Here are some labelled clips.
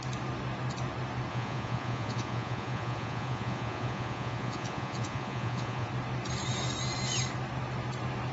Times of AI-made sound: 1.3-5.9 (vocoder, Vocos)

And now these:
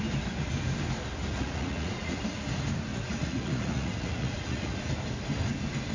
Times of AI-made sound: 1.3-2.2 (vocoder, Vocos); 2.9-4.8